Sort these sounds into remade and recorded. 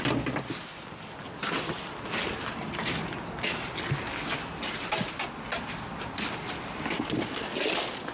recorded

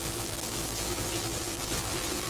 remade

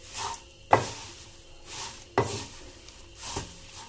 recorded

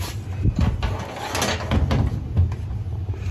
recorded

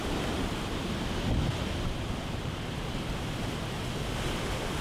remade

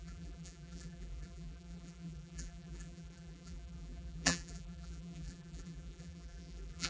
remade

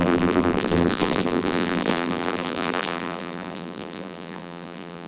remade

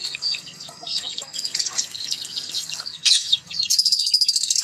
remade